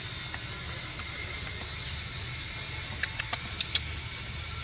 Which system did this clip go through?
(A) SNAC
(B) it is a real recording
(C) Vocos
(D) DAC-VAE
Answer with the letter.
B